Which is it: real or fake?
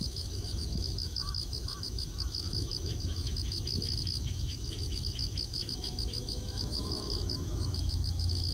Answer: fake